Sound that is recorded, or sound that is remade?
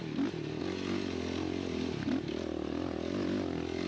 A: recorded